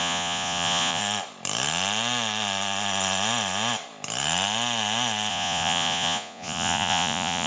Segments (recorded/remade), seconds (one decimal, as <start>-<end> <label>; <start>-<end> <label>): 0.0-1.0 remade; 1.0-5.3 recorded; 5.3-7.5 remade